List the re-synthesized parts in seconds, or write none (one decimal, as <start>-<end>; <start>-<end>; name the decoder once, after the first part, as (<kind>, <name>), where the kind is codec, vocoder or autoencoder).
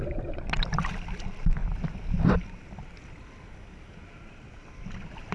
none